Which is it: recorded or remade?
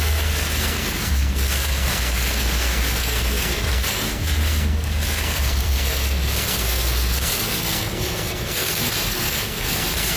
remade